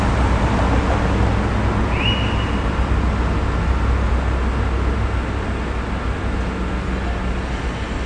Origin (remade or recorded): recorded